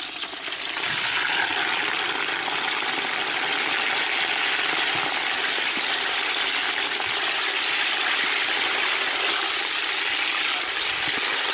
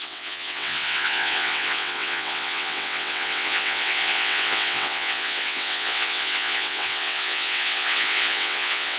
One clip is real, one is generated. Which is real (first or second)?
first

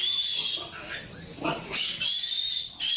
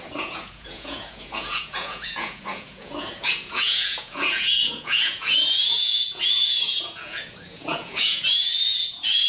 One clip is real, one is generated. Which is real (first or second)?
first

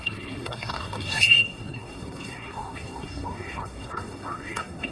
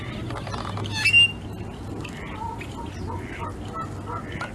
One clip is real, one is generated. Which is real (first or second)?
second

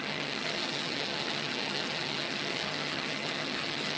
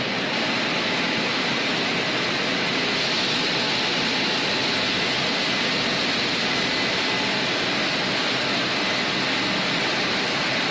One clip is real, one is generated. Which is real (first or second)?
second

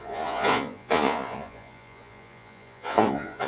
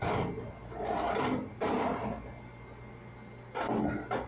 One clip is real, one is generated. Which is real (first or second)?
second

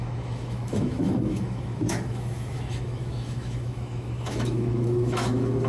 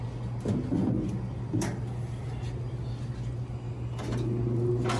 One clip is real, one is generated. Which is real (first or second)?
second